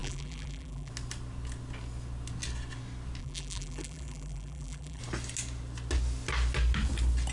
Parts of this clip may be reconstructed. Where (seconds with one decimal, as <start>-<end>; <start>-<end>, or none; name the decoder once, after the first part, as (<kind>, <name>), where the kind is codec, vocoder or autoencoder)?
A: 0.0-0.9 (vocoder, BigVGAN v2); 3.2-5.0